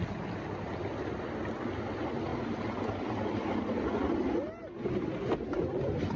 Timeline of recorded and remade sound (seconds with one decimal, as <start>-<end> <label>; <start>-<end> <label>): 0.0-6.2 recorded

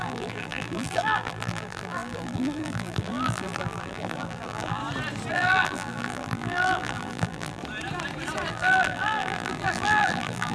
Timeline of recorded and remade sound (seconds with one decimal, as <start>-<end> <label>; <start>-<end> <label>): 0.0-4.8 remade; 4.8-5.3 recorded; 5.3-7.6 remade; 7.6-8.5 recorded; 8.5-10.5 remade

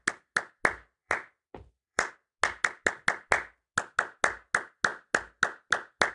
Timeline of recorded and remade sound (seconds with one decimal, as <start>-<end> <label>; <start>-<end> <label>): 0.0-1.0 recorded; 1.0-2.1 remade; 2.1-6.1 recorded

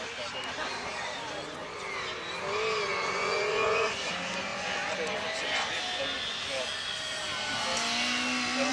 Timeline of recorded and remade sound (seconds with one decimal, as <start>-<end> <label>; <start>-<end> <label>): 0.0-2.9 recorded; 2.9-4.1 remade; 4.1-8.7 recorded

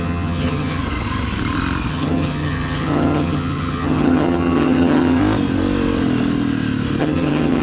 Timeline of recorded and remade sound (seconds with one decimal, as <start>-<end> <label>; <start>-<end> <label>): 0.0-0.8 remade; 0.8-1.9 recorded; 1.9-5.2 remade; 5.2-7.0 recorded; 7.0-7.6 remade

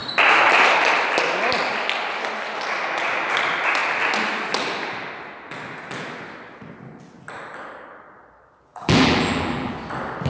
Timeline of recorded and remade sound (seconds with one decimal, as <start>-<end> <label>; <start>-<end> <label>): 0.0-8.7 recorded; 8.7-9.7 remade; 9.7-10.3 recorded